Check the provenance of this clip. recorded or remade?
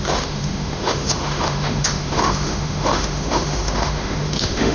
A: remade